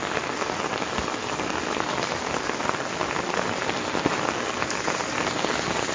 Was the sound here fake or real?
real